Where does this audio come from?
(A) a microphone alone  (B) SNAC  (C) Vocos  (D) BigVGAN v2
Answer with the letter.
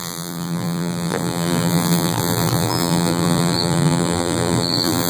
D